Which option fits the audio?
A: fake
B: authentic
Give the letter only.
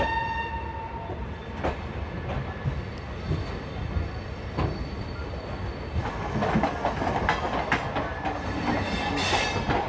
B